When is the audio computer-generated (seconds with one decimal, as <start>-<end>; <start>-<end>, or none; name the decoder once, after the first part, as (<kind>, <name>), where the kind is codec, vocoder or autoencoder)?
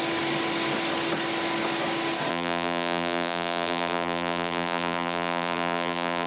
2.3-6.3 (vocoder, BigVGAN v2)